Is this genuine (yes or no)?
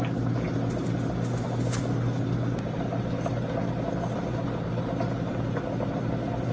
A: yes